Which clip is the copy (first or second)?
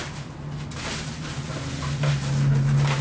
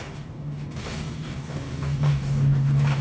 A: second